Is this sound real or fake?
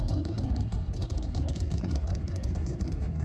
fake